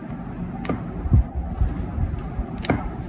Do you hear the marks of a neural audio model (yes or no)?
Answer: no